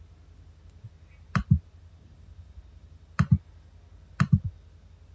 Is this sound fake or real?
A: real